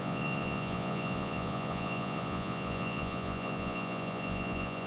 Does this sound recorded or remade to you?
remade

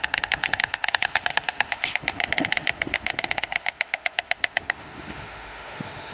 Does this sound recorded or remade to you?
remade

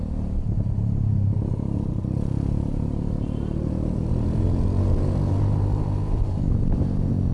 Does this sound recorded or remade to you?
remade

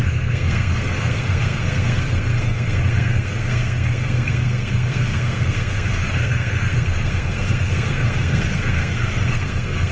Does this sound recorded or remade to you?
remade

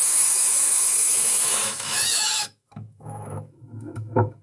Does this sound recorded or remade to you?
remade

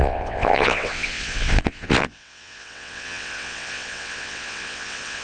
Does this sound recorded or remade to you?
remade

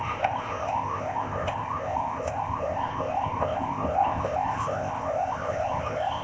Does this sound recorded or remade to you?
remade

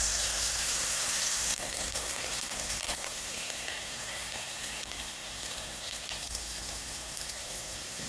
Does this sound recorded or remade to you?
remade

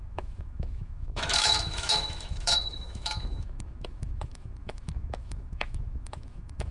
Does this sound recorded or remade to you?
remade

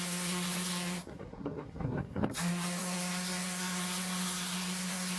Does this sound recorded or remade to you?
remade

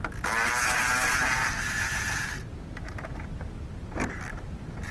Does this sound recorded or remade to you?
remade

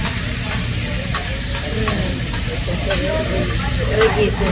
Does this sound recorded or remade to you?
recorded